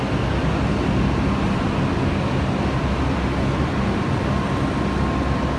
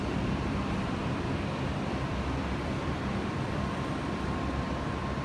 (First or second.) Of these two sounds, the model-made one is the second